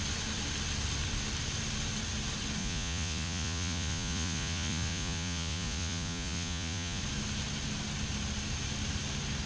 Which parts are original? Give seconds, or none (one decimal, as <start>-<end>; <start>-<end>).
0.0-2.6; 7.0-9.5